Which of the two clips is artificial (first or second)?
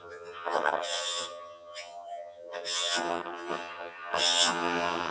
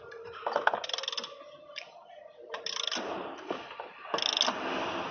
first